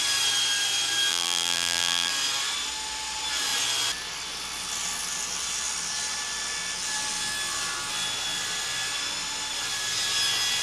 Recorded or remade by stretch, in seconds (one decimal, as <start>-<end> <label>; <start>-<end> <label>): 0.0-1.1 recorded; 1.1-2.1 remade; 2.1-10.6 recorded